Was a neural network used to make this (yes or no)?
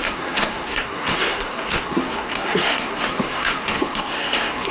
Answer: yes